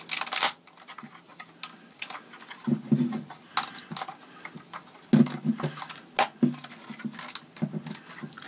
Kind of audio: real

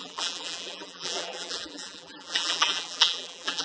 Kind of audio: fake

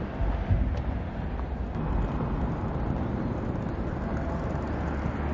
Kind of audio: real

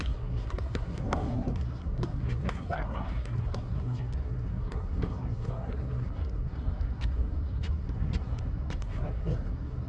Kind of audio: fake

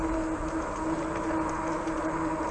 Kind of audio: real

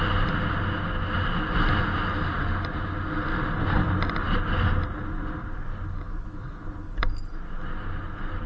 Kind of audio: real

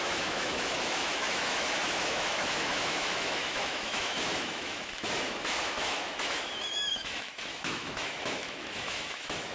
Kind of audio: fake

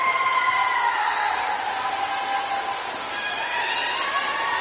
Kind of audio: real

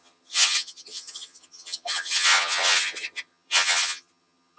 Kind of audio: fake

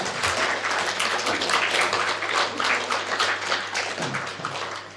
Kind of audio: real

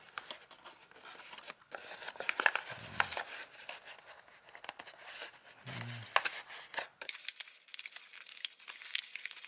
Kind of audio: real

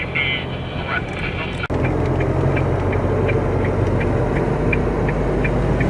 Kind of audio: real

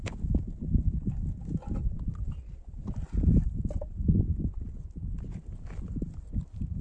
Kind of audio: real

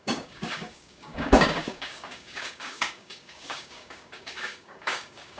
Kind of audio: fake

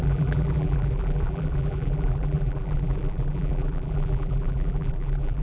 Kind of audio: fake